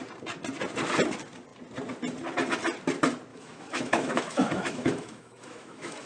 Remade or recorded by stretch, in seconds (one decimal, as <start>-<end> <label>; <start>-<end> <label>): 0.0-3.3 recorded; 3.3-6.1 remade